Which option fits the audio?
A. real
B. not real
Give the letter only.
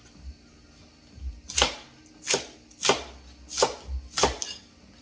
A